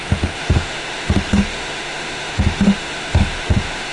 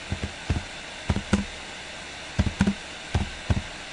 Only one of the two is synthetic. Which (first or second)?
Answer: first